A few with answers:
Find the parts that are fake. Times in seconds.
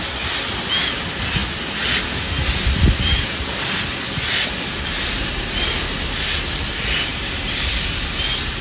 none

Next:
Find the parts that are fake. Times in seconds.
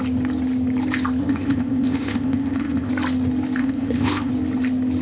1.2-2.9 (codec, ZipCodec); 3.6-4.3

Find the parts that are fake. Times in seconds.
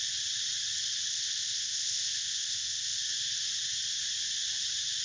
1.1-3.0 (codec, ZipCodec)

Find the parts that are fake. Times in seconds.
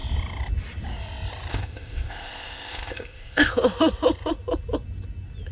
1.5-3.5 (codec, ZipCodec)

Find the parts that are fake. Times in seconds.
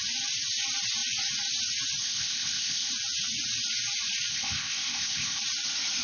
2.0-2.9 (codec, ZipCodec); 4.3-5.4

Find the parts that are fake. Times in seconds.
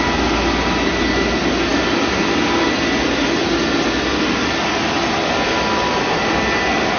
none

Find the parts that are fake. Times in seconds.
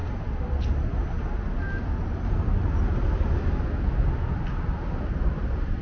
none